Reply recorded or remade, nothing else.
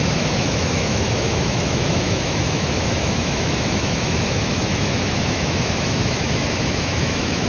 remade